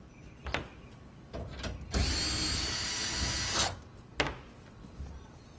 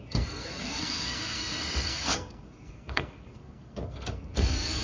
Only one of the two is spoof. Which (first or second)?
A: second